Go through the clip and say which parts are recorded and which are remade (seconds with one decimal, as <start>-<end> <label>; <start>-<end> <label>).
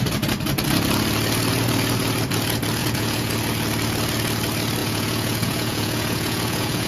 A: 0.0-2.8 recorded; 2.8-3.3 remade; 3.3-4.8 recorded; 4.8-6.9 remade